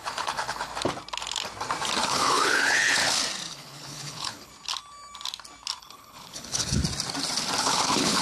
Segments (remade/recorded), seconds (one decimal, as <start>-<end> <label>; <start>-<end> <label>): 0.0-0.7 remade; 0.7-2.0 recorded; 2.0-3.0 remade; 3.0-3.5 recorded; 3.5-4.5 remade; 4.5-5.8 recorded; 5.8-6.8 remade; 6.8-7.6 recorded; 7.6-8.2 remade